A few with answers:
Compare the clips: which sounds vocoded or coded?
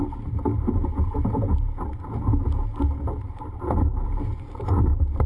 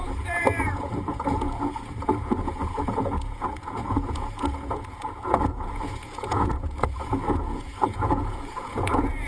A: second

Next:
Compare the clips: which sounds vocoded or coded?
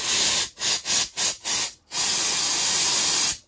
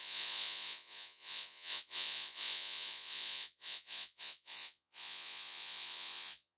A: second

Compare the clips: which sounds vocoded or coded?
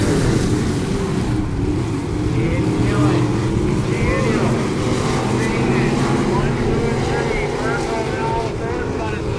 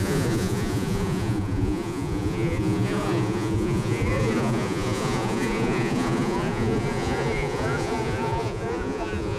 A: second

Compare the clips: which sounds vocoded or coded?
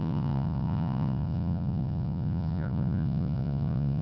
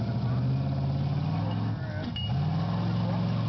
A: first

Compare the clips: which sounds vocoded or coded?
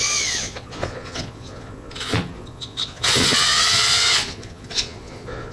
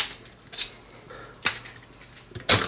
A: first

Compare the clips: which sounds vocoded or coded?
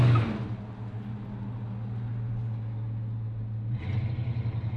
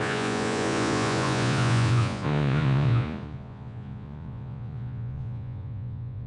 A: second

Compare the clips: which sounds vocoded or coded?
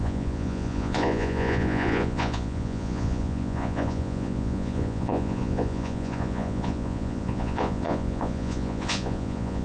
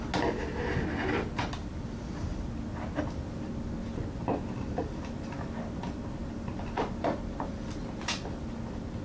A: first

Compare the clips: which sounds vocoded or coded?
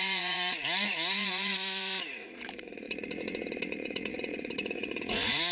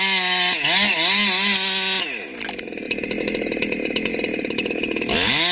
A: first